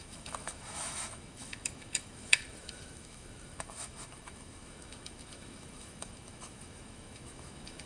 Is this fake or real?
fake